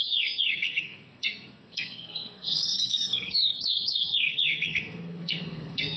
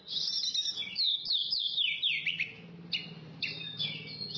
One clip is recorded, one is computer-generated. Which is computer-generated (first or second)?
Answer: first